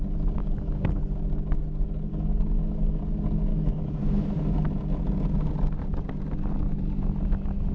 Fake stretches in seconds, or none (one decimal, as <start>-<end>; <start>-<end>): 0.4-1.0; 2.1-3.0; 3.5-4.0